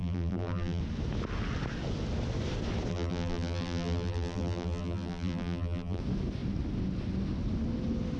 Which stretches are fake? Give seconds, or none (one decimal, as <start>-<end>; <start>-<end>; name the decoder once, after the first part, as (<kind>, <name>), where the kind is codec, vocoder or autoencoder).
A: 0.0-0.8 (vocoder, BigVGAN v2); 2.9-6.0